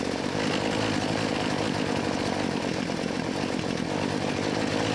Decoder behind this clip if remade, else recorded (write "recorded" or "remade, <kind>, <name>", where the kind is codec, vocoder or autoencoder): recorded